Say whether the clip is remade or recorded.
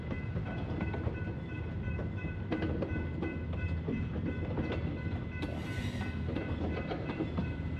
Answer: recorded